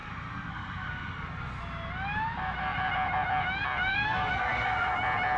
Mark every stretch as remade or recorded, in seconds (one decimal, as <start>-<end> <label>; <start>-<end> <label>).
0.0-1.6 remade; 1.6-3.9 recorded; 3.9-4.9 remade; 4.9-5.4 recorded